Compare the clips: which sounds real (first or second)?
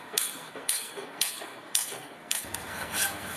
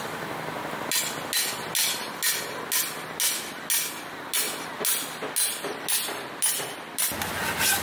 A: second